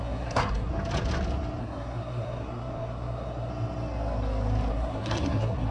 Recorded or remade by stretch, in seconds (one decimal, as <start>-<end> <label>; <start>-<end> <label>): 0.0-0.7 remade; 0.7-1.6 recorded; 1.6-3.5 remade; 3.5-4.7 recorded; 4.7-5.7 remade